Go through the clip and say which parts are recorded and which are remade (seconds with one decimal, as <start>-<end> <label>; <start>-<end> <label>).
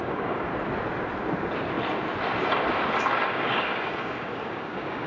0.0-0.5 remade; 0.5-3.3 recorded; 3.3-5.1 remade